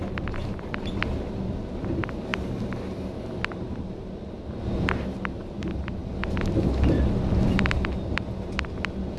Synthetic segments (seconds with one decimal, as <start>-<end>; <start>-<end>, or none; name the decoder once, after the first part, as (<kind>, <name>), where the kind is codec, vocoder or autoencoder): none

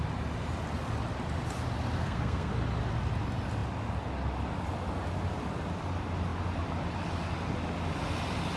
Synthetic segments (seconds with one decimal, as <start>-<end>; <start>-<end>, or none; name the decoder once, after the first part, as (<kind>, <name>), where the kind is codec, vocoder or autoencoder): 2.0-2.5 (codec, SNAC)

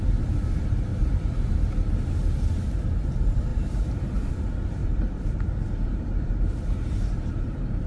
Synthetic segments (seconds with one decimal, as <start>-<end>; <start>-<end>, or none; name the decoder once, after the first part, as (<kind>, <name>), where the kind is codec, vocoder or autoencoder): 0.9-1.6 (vocoder, BigVGAN v2); 3.5-4.3; 4.8-7.9

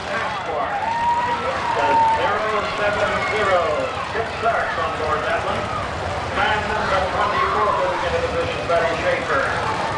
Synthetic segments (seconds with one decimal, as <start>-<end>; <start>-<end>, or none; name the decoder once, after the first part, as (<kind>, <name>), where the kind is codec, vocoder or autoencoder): 0.5-10.0 (vocoder, BigVGAN v2)

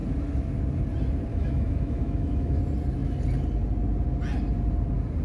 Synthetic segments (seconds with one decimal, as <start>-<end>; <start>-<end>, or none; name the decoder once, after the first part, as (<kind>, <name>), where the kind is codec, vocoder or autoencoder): 1.3-2.6 (autoencoder, DAC-VAE)

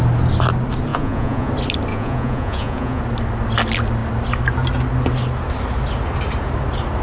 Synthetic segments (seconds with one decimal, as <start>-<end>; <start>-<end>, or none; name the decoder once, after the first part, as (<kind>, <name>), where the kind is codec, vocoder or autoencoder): 0.9-1.5 (vocoder, Vocos); 1.9-3.0